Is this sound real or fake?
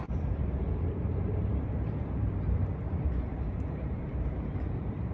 fake